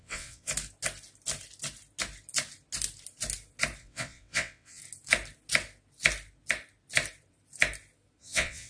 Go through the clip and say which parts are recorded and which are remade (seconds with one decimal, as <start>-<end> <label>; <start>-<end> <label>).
0.0-0.5 remade; 0.5-3.8 recorded; 3.8-4.8 remade; 4.8-8.2 recorded; 8.2-8.7 remade

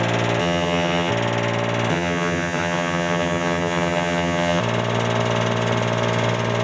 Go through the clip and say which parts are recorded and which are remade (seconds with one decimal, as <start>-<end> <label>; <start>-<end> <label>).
0.0-0.4 recorded; 0.4-1.1 remade; 1.1-1.9 recorded; 1.9-4.6 remade; 4.6-6.6 recorded

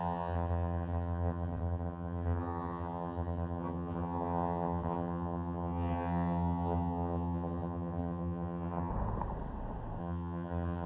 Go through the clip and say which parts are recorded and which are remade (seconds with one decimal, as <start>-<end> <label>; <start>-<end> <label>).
0.0-8.9 remade; 8.9-10.0 recorded; 10.0-10.9 remade

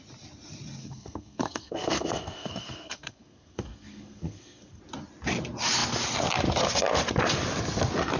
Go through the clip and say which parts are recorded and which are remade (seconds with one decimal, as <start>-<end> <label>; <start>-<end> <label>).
0.0-0.8 recorded; 0.8-4.8 remade; 4.8-8.2 recorded

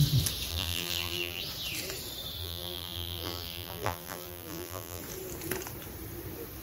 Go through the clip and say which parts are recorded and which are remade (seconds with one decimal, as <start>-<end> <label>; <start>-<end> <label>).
0.0-0.5 recorded; 0.5-1.4 remade; 1.4-2.4 recorded; 2.4-5.0 remade; 5.0-6.6 recorded